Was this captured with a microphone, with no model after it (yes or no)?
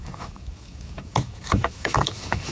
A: no